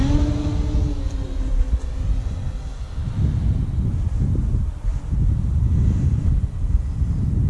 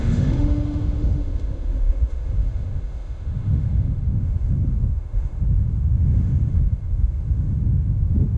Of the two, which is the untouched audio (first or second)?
first